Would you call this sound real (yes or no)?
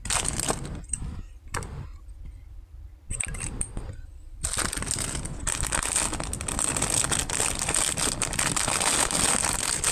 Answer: yes